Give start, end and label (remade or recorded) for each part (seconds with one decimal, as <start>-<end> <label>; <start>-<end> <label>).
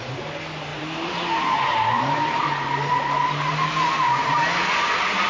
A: 0.0-0.7 recorded; 0.7-3.0 remade; 3.0-5.3 recorded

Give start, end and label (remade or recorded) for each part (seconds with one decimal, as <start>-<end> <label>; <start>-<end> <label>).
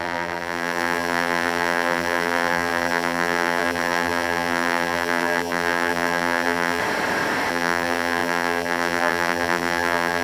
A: 0.0-6.8 remade; 6.8-7.5 recorded; 7.5-10.2 remade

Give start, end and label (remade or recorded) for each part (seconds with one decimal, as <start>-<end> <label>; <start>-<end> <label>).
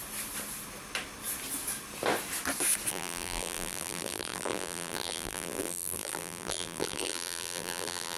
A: 0.0-2.9 recorded; 2.9-8.2 remade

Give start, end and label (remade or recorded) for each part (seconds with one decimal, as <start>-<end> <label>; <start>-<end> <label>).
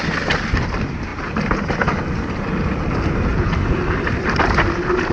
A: 0.0-3.3 recorded; 3.3-4.6 remade; 4.6-5.1 recorded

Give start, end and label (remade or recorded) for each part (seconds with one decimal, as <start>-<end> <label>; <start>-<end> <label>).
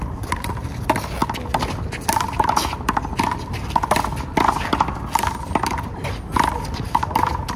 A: 0.0-1.2 remade; 1.2-5.8 recorded; 5.8-7.6 remade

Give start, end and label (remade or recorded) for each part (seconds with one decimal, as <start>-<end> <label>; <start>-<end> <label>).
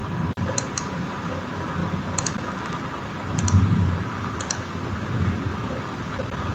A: 0.0-1.3 remade; 1.3-6.5 recorded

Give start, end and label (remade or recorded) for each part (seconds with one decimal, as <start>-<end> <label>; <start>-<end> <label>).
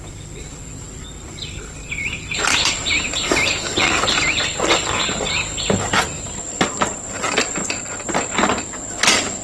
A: 0.0-2.0 recorded; 2.0-7.2 remade; 7.2-9.4 recorded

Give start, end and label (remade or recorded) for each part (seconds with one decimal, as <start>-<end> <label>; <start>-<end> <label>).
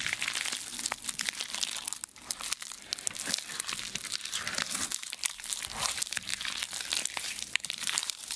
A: 0.0-4.7 recorded; 4.7-6.3 remade; 6.3-7.1 recorded; 7.1-8.4 remade